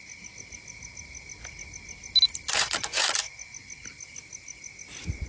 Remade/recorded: recorded